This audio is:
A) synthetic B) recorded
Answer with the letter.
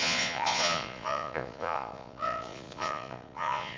A